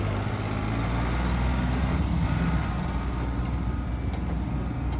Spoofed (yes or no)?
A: no